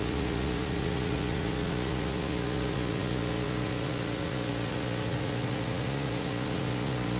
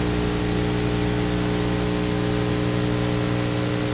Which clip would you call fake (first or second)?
first